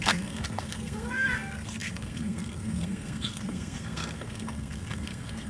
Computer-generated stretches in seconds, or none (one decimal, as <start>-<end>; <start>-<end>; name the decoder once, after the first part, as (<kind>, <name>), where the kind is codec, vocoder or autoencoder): 0.0-5.5 (codec, SNAC)